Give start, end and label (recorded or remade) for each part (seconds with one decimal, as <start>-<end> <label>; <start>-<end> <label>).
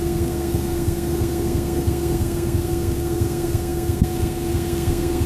0.0-5.3 remade